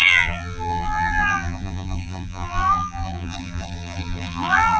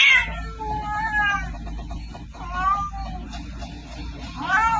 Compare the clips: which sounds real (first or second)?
second